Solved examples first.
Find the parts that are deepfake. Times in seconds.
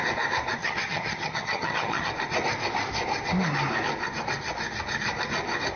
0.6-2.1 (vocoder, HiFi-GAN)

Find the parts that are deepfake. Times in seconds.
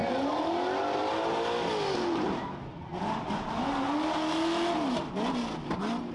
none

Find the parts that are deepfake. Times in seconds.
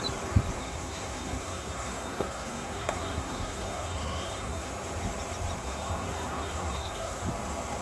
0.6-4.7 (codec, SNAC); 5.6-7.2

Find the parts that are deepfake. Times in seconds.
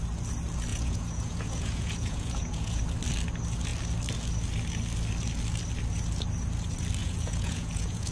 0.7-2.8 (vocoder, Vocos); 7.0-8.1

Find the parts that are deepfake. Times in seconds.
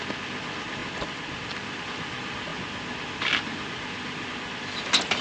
none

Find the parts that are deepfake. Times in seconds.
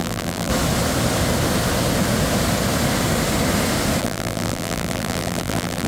0.0-0.5 (vocoder, BigVGAN v2); 4.0-5.9